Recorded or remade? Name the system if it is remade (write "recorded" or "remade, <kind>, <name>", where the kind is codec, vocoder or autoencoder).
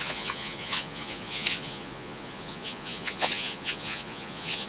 remade, vocoder, Vocos